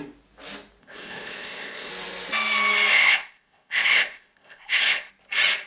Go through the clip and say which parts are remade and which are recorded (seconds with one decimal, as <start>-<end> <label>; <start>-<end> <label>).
0.0-0.8 recorded; 0.8-1.9 remade; 1.9-2.9 recorded; 2.9-5.1 remade; 5.1-5.7 recorded